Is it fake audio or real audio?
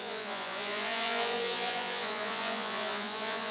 fake